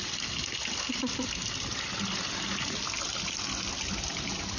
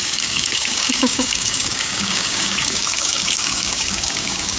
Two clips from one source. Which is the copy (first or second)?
second